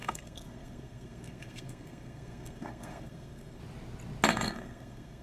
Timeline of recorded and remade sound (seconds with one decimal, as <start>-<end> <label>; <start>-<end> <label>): 0.0-3.6 remade; 3.6-4.3 recorded; 4.3-5.2 remade